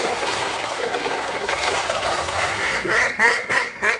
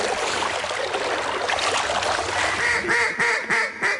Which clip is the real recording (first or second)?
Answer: second